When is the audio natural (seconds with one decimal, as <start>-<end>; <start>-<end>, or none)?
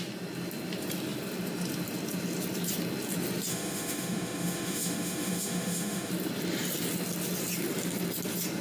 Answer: 0.0-3.5; 6.1-8.6